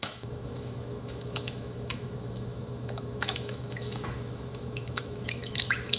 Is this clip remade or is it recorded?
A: remade